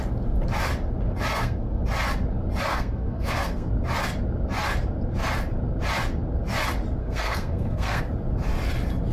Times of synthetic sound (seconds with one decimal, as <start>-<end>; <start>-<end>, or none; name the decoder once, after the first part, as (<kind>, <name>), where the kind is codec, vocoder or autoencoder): 1.3-1.8 (codec, SNAC); 2.7-3.7; 7.0-8.0